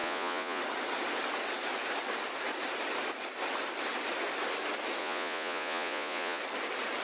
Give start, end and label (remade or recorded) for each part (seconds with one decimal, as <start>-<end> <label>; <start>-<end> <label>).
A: 0.0-0.6 remade; 0.6-5.0 recorded; 5.0-6.4 remade; 6.4-7.0 recorded